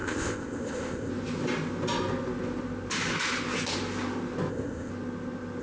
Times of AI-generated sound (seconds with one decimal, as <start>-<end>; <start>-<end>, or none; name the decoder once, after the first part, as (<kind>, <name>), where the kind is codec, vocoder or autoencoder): 0.0-1.1 (codec, ZipCodec); 4.5-4.9